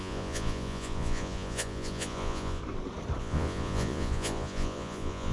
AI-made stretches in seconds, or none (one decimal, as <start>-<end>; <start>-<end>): 0.0-2.6; 3.2-5.3